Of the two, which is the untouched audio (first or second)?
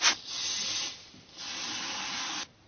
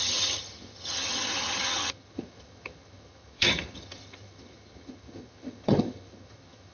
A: first